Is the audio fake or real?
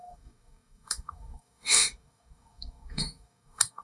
fake